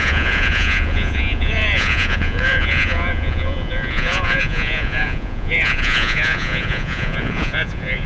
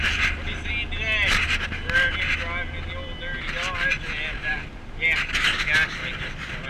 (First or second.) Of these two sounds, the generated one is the first